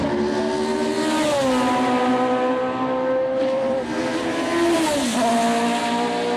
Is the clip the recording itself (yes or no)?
yes